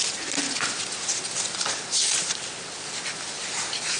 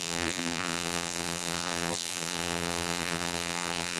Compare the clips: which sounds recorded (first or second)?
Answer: first